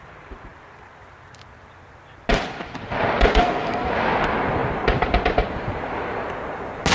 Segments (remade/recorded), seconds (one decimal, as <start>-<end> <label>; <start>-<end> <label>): 0.0-3.3 recorded; 3.3-3.9 remade; 3.9-6.9 recorded